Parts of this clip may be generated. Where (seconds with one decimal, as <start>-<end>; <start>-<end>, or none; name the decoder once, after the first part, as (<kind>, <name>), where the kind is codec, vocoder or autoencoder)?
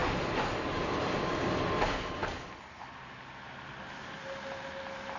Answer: none